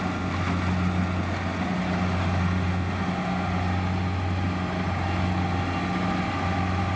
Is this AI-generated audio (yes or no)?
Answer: no